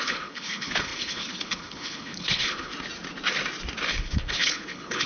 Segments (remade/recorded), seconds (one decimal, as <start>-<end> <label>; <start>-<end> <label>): 0.0-2.7 remade; 2.7-3.9 recorded; 3.9-5.1 remade